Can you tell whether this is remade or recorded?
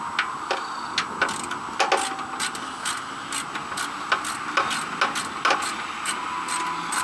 recorded